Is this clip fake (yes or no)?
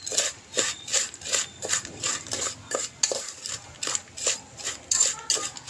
no